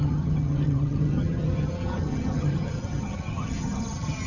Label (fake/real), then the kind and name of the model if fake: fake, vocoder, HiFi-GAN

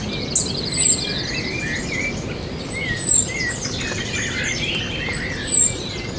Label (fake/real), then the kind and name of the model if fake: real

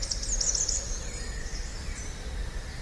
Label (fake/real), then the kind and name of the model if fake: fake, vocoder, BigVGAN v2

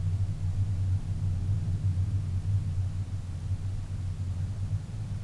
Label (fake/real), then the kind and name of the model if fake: real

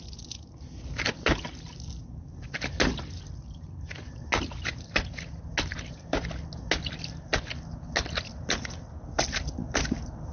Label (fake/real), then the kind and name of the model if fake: real